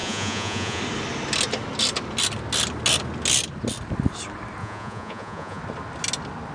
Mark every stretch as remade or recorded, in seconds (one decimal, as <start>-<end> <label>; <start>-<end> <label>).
0.0-0.8 remade; 0.8-4.6 recorded; 4.6-5.6 remade; 5.6-6.5 recorded